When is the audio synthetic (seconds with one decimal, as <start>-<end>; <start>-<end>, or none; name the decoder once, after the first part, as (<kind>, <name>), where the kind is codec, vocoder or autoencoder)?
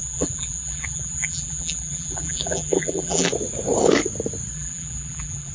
0.0-3.3 (vocoder, BigVGAN v2); 4.5-5.5